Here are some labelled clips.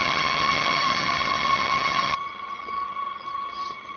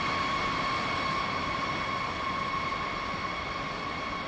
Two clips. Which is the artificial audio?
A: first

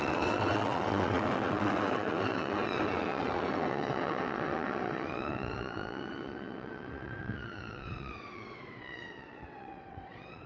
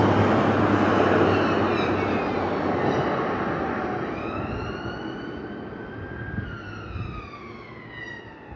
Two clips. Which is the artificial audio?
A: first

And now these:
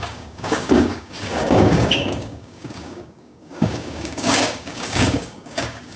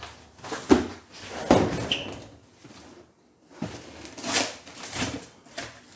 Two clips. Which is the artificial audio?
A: first